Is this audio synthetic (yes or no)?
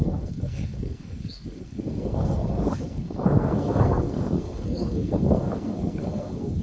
yes